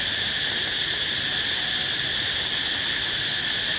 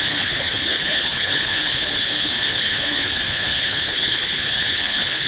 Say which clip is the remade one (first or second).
second